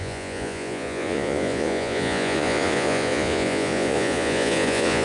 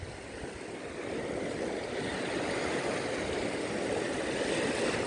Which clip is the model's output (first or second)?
first